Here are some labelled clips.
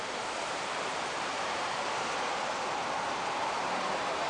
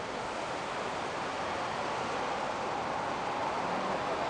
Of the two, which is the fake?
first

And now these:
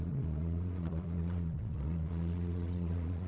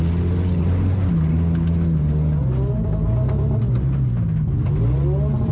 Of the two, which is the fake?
first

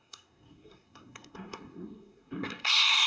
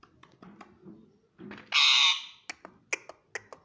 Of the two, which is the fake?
first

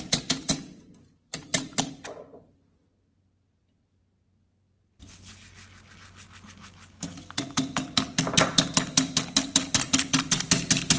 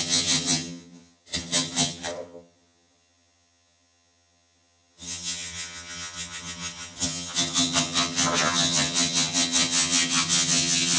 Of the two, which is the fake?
second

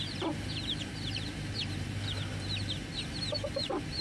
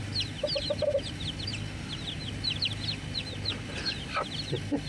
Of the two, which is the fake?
first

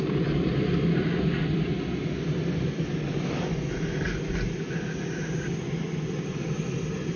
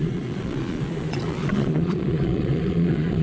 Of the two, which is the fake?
second